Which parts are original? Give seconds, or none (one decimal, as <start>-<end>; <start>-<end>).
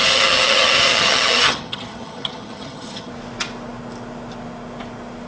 3.1-5.3